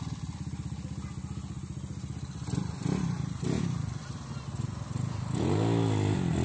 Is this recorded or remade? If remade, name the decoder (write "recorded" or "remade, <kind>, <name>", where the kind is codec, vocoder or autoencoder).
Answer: recorded